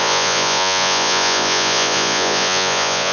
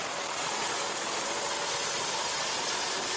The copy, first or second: first